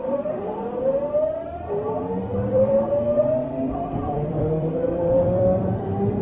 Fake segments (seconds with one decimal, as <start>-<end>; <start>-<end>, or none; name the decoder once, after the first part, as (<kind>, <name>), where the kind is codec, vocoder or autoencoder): 0.0-2.9 (vocoder, BigVGAN v2); 3.5-6.2